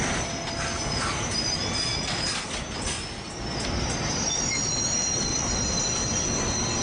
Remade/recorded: recorded